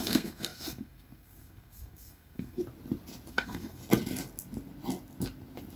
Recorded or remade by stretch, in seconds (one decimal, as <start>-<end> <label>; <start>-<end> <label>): 0.0-2.6 remade; 2.6-3.3 recorded; 3.3-3.8 remade; 3.8-5.8 recorded